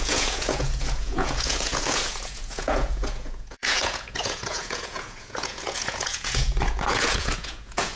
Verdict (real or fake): fake